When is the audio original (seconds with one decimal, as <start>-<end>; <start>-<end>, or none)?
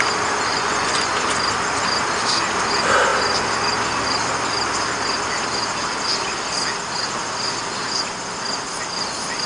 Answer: 0.0-0.5; 1.1-9.5